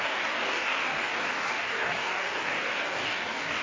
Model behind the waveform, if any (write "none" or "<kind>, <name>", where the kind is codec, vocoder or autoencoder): codec, DAC